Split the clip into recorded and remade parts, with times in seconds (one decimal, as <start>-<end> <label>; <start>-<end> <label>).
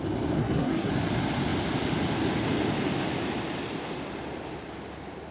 0.0-0.4 recorded; 0.4-0.9 remade; 0.9-5.3 recorded